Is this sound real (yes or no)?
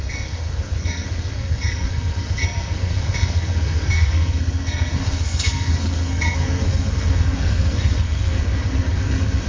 no